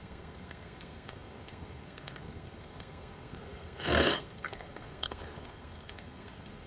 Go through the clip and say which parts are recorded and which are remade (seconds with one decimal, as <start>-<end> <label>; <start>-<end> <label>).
0.0-6.7 remade